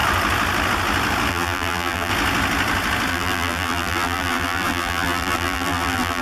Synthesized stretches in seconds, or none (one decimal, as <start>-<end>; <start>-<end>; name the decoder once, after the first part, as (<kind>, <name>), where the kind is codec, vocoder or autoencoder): 1.3-2.1 (vocoder, BigVGAN v2); 3.1-6.2